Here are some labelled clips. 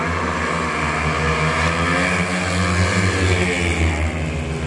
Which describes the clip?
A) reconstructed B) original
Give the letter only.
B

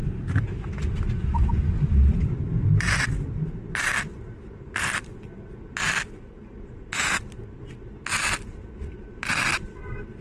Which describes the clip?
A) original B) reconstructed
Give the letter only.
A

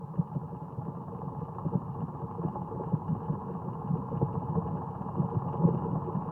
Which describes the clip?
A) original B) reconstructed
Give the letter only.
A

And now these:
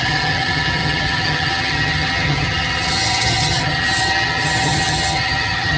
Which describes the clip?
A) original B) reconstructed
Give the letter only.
B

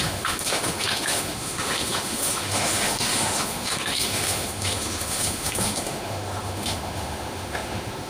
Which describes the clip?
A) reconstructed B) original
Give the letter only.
A